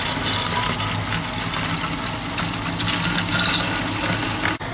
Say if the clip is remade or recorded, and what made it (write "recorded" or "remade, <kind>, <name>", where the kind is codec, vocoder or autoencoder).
recorded